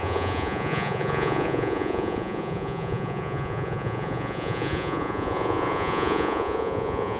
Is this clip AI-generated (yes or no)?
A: yes